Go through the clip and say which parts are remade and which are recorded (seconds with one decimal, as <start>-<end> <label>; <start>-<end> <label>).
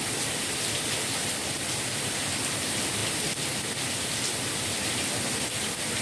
0.0-6.0 recorded